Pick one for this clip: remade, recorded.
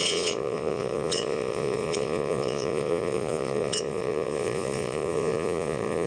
remade